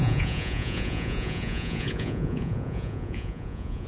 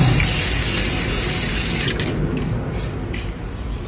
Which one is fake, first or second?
first